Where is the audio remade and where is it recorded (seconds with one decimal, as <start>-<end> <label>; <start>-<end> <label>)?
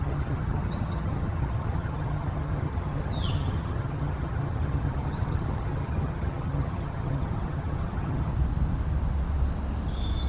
0.0-8.3 remade; 8.3-10.3 recorded